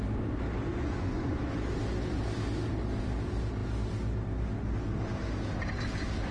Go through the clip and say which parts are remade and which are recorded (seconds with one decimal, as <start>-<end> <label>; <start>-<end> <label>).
0.0-0.7 recorded; 0.7-1.4 remade; 1.4-6.3 recorded